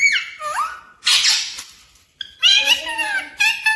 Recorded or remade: recorded